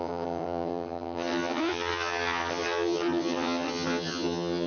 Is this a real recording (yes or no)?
no